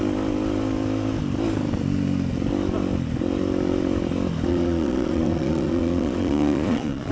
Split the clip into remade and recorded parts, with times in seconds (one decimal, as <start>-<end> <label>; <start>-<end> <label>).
0.0-4.5 recorded; 4.5-7.1 remade